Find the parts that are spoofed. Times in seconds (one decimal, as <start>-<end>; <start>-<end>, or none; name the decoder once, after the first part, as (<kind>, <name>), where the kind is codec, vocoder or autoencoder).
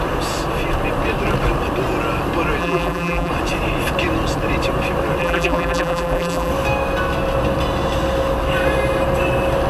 2.6-3.3 (vocoder, BigVGAN v2); 5.2-6.5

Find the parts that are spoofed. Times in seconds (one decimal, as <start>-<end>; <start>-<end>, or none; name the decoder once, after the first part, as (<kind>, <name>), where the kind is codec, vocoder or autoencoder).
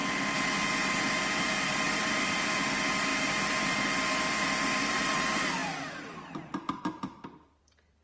1.3-3.1 (vocoder, BigVGAN v2); 4.3-8.0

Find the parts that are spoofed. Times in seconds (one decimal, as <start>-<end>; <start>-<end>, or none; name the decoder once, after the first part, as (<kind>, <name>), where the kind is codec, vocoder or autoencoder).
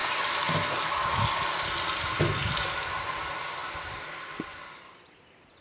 3.0-3.6 (vocoder, BigVGAN v2); 4.7-5.6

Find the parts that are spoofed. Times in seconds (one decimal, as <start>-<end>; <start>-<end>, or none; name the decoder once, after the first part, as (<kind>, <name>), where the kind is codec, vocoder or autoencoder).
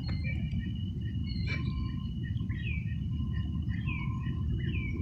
none